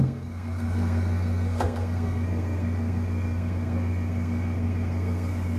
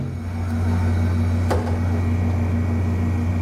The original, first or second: second